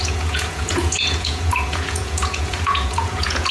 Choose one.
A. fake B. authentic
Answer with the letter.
A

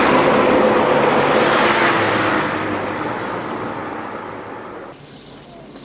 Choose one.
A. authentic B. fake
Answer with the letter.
A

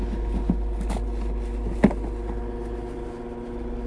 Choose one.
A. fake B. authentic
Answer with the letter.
B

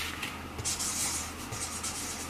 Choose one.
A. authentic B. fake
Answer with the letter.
A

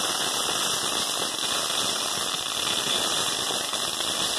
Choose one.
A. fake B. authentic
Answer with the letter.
B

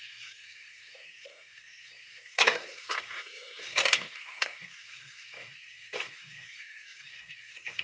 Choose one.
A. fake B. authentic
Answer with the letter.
A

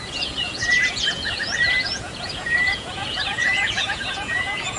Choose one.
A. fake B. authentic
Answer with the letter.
A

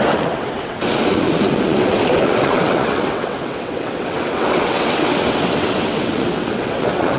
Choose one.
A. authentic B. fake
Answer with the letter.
B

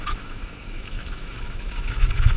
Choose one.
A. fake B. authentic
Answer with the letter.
A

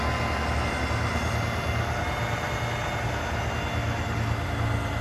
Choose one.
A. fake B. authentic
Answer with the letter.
B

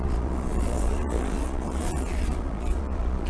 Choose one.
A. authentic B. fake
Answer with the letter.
B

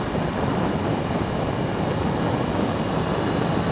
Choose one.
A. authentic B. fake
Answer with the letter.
A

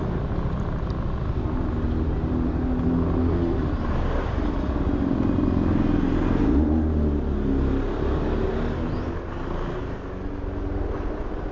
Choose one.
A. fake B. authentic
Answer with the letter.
B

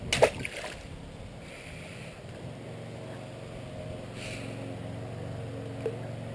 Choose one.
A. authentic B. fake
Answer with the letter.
A